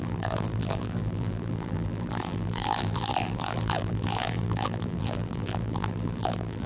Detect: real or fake fake